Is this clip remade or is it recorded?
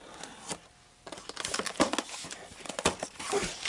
recorded